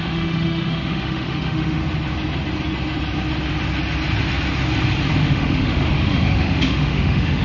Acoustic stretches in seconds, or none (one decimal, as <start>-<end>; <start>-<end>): 1.8-5.2